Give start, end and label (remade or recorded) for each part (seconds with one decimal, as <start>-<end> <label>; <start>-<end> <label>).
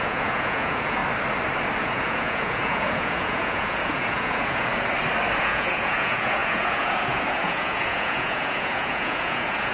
0.0-1.0 remade; 1.0-1.8 recorded; 1.8-4.7 remade; 4.7-5.4 recorded; 5.4-9.7 remade